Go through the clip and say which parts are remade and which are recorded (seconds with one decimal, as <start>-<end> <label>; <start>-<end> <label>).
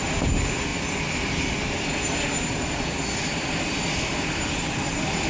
0.0-5.3 recorded